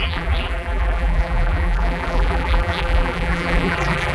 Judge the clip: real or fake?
fake